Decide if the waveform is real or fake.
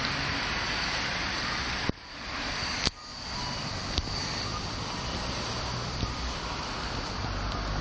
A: fake